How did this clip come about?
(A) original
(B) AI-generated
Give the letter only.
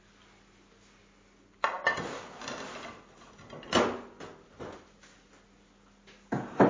A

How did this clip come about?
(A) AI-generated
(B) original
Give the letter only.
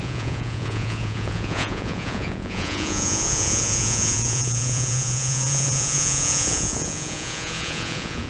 A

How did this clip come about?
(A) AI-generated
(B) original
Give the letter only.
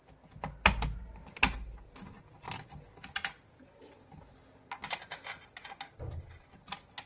B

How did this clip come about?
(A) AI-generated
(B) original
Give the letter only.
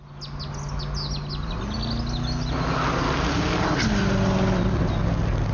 B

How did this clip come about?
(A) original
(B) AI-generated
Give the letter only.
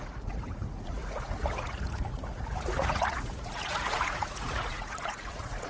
B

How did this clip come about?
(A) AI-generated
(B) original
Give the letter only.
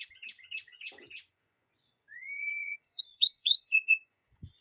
A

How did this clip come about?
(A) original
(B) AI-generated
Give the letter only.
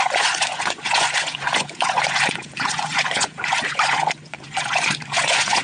B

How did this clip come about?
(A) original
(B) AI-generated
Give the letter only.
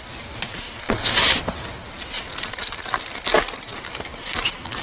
A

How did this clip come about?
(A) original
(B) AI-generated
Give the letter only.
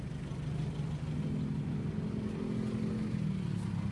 A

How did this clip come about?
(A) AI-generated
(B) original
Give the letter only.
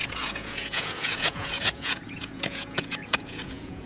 A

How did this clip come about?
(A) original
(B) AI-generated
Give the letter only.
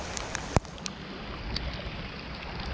A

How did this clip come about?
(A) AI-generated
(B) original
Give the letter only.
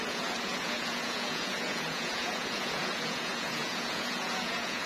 A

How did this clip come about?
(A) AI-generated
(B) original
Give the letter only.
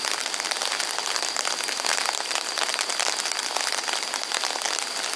B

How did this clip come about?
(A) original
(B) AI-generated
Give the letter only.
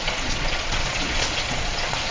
B